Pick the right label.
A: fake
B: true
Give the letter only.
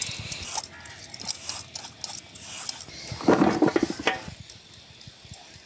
B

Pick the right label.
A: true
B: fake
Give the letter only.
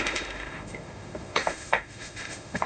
B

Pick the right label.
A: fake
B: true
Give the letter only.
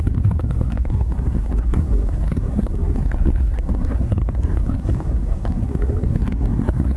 A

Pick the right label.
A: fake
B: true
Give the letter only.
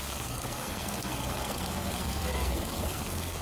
A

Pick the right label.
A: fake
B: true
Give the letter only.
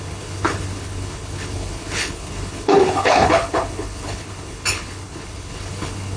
A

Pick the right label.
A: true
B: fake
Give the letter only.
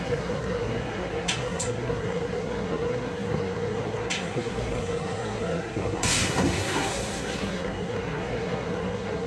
B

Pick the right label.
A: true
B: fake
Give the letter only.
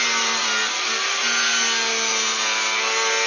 A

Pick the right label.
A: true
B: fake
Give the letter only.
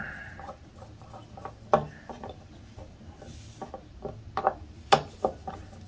A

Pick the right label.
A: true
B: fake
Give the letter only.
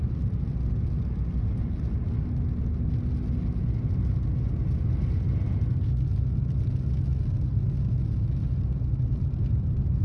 A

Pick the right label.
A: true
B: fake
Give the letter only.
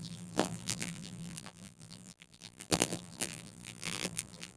B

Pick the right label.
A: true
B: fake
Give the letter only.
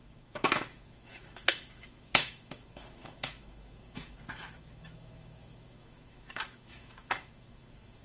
B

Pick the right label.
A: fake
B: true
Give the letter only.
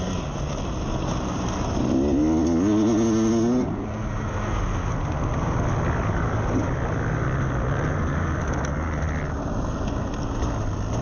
B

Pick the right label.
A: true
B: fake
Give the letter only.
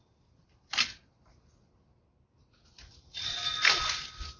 A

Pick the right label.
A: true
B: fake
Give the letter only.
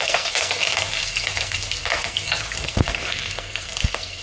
B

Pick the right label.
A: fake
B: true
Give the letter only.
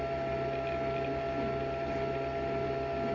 B